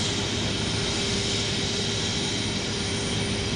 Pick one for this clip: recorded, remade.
recorded